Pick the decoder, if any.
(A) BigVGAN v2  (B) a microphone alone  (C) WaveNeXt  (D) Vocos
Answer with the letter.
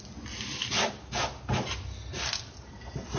B